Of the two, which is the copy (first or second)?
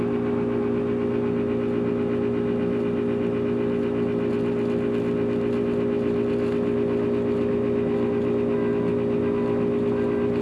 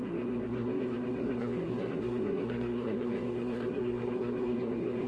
second